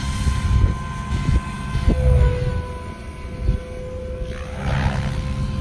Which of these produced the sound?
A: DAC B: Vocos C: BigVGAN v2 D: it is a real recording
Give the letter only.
D